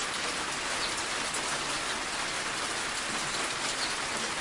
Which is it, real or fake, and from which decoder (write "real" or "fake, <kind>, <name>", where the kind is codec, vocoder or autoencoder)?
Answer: real